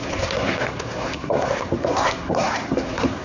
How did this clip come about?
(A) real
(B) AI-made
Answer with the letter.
B